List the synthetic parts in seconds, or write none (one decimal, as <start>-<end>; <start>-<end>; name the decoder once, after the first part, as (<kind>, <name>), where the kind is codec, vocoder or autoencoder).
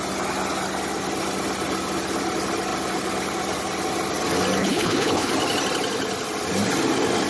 4.6-5.3 (codec, HILCodec)